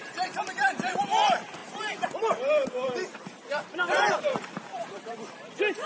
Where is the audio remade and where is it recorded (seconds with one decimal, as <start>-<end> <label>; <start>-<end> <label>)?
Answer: 0.0-2.6 recorded; 2.6-5.5 remade; 5.5-5.9 recorded